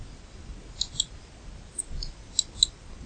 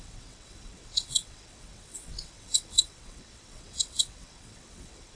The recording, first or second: first